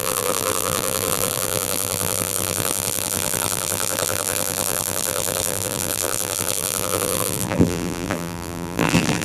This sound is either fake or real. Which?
fake